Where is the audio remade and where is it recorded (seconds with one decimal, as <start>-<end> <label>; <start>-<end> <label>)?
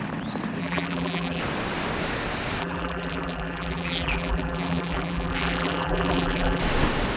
0.0-0.6 recorded; 0.6-1.4 remade; 1.4-2.6 recorded; 2.6-6.6 remade; 6.6-7.2 recorded